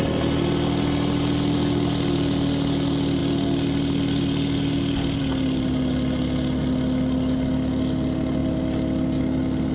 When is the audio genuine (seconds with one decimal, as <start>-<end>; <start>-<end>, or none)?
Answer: 0.0-9.7